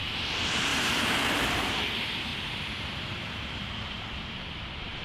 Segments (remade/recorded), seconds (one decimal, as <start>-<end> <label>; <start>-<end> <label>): 0.0-2.3 remade; 2.3-3.0 recorded; 3.0-5.0 remade